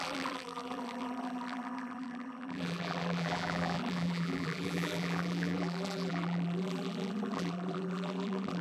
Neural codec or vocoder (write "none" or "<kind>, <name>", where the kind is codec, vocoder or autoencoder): vocoder, BigVGAN v2